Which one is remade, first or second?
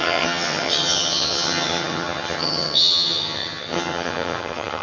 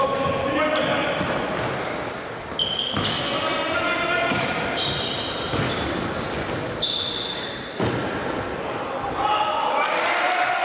first